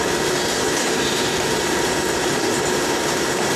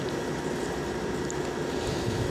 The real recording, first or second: second